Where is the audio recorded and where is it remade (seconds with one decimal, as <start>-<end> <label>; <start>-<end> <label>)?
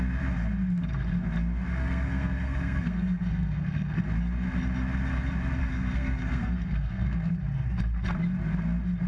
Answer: 0.0-1.7 recorded; 1.7-4.0 remade; 4.0-5.6 recorded; 5.6-7.3 remade; 7.3-9.1 recorded